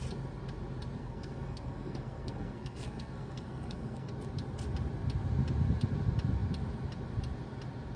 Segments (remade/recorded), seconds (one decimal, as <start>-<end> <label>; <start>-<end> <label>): 0.0-1.0 recorded; 1.0-4.1 remade; 4.1-8.0 recorded